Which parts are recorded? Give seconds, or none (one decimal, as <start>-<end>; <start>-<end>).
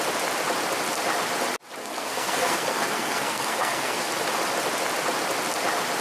0.0-1.8; 4.1-6.0